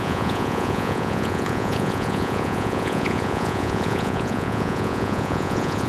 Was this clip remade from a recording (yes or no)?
yes